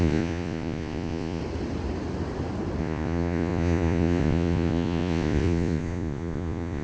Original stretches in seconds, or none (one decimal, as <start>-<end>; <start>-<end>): 1.4-2.8